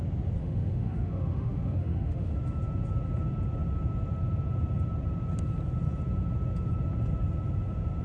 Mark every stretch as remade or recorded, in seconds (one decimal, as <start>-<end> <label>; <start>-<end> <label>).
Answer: 0.0-0.4 recorded; 0.4-2.3 remade; 2.3-8.0 recorded